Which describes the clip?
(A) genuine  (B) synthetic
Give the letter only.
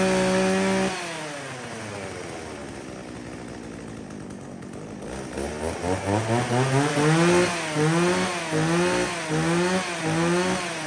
A